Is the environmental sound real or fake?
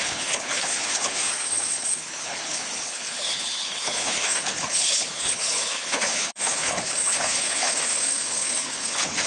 fake